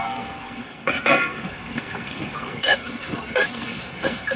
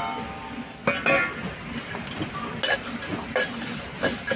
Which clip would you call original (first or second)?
second